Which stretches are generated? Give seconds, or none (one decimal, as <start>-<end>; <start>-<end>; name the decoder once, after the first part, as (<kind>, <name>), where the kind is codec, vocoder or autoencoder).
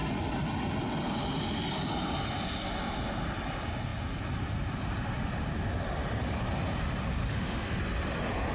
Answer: 7.2-7.8 (autoencoder, DAC-VAE)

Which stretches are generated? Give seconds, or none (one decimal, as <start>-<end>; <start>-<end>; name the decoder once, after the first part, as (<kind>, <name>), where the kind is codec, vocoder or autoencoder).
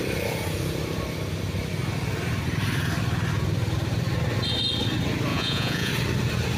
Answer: 5.3-5.9 (vocoder, Vocos)